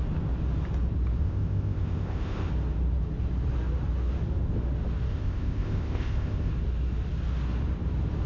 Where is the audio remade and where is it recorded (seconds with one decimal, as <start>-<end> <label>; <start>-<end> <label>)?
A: 0.0-1.2 recorded; 1.2-2.5 remade; 2.5-5.1 recorded; 5.1-6.5 remade; 6.5-8.3 recorded

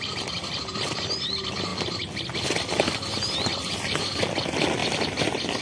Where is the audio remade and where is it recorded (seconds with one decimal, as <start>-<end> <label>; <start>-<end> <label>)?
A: 0.0-5.6 recorded

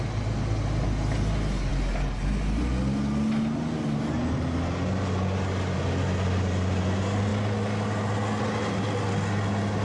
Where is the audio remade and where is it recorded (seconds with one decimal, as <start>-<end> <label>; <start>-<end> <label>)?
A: 0.0-9.8 recorded

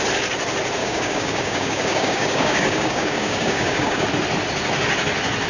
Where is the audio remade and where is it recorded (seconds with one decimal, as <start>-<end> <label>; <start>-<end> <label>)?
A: 0.0-0.8 recorded; 0.8-4.1 remade; 4.1-5.5 recorded

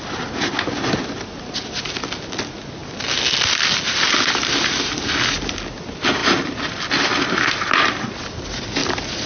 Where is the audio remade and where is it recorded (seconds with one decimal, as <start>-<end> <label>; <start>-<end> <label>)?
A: 0.0-9.3 recorded

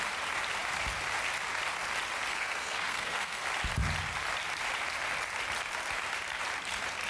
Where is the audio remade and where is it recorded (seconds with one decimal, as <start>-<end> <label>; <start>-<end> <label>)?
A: 0.0-2.3 recorded; 2.3-3.4 remade; 3.4-7.1 recorded

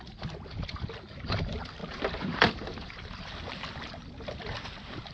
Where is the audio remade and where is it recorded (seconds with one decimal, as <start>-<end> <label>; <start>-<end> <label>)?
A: 0.0-1.8 recorded; 1.8-5.1 remade

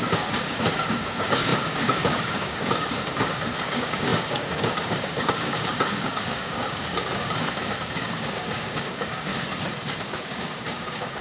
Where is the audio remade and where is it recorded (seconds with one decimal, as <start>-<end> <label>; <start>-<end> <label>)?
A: 0.0-9.3 remade; 9.3-10.0 recorded; 10.0-11.2 remade